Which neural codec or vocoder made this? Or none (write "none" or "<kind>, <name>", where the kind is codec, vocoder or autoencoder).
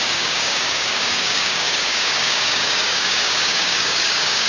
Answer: codec, DAC